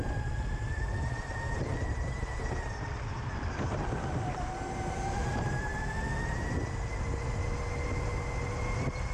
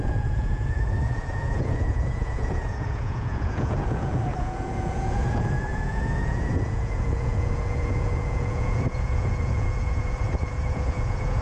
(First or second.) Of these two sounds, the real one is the first